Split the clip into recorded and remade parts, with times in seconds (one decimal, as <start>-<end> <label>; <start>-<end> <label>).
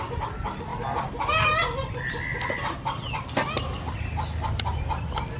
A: 0.0-5.4 recorded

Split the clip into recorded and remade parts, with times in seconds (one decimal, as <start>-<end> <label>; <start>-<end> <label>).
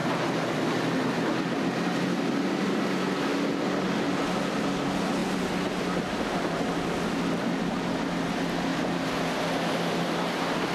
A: 0.0-0.8 remade; 0.8-8.7 recorded; 8.7-9.4 remade; 9.4-10.7 recorded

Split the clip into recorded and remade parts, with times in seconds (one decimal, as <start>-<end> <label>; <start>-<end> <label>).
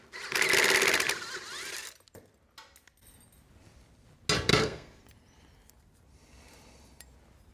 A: 0.0-4.5 recorded; 4.5-5.0 remade; 5.0-7.5 recorded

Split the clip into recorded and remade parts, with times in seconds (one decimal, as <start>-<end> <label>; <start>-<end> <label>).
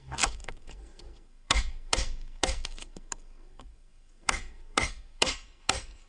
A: 0.0-6.1 remade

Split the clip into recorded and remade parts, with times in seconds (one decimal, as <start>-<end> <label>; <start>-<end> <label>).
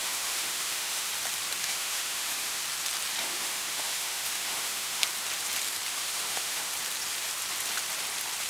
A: 0.0-1.1 remade; 1.1-1.6 recorded; 1.6-2.6 remade; 2.6-3.2 recorded; 3.2-5.0 remade; 5.0-5.9 recorded; 5.9-6.7 remade; 6.7-8.5 recorded